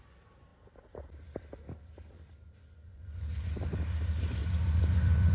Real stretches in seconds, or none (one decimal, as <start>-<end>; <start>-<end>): 0.0-2.9; 3.5-5.3